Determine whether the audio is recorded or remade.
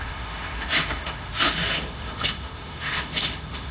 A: remade